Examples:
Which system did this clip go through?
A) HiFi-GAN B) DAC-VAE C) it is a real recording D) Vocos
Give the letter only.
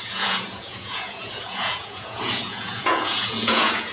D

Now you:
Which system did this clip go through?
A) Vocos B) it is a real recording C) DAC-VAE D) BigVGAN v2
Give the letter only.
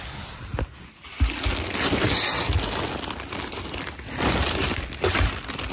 B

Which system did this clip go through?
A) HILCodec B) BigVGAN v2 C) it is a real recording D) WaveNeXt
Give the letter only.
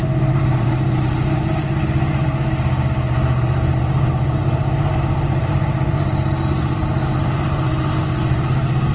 B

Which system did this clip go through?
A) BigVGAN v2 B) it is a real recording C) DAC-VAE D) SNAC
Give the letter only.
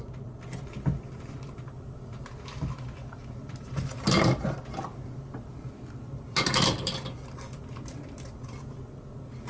B